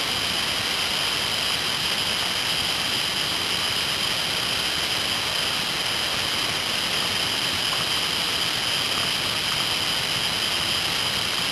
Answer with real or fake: real